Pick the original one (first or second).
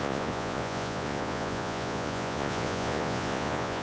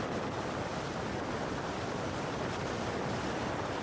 second